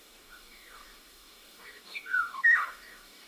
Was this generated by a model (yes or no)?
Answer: yes